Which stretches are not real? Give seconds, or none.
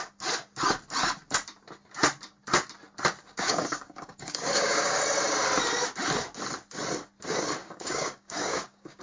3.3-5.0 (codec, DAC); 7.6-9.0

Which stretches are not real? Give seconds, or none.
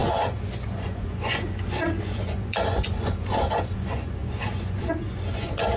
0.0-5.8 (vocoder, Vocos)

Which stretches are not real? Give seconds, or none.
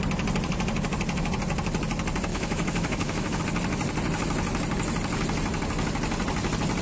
2.3-3.4 (autoencoder, DAC-VAE)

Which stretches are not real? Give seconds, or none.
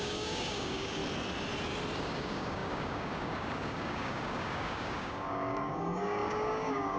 0.0-1.0 (codec, DAC); 2.0-7.0